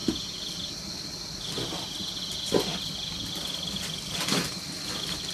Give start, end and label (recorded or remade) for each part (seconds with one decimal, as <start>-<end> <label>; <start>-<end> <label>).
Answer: 0.0-2.2 remade; 2.2-2.7 recorded; 2.7-4.7 remade; 4.7-5.3 recorded